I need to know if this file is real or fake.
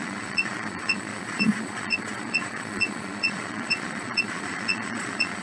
fake